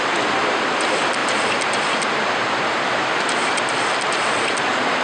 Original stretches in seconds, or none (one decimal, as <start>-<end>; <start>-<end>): 1.2-2.8